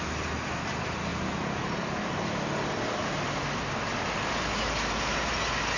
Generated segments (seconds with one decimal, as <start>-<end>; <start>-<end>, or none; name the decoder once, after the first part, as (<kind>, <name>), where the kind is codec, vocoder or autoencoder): none